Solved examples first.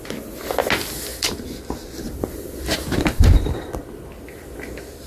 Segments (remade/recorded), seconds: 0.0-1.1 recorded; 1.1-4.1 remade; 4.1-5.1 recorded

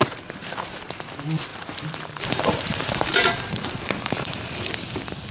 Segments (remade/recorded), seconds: 0.0-1.5 recorded; 1.5-4.7 remade; 4.7-5.3 recorded

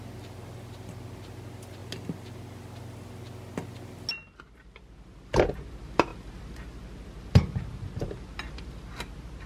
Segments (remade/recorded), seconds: 0.0-9.5 recorded

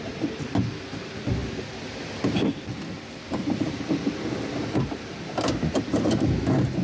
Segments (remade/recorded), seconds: 0.0-6.8 remade

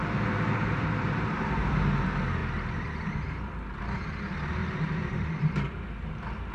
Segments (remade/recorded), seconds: 0.0-1.7 remade; 1.7-4.6 recorded; 4.6-6.5 remade

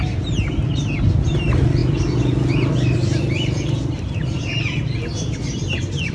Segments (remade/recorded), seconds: 0.0-6.1 recorded

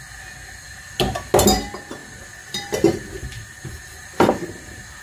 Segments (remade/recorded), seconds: 0.0-2.0 recorded; 2.0-4.3 remade; 4.3-5.0 recorded

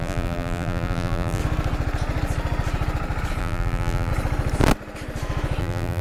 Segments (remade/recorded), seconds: 0.0-1.4 remade; 1.4-3.4 recorded; 3.4-4.1 remade; 4.1-5.6 recorded; 5.6-6.0 remade